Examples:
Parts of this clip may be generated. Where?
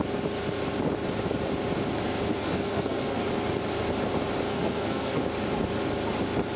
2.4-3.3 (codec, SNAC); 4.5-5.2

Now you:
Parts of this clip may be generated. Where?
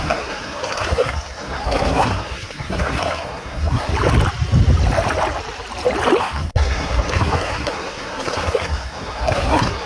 0.0-3.9 (codec, SNAC); 6.2-9.9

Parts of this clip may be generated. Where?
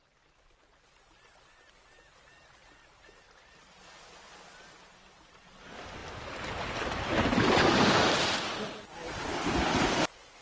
none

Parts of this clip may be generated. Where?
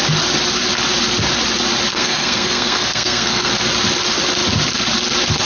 1.9-3.5 (codec, SNAC)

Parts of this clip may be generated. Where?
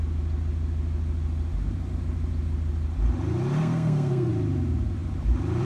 3.6-4.3 (codec, SNAC)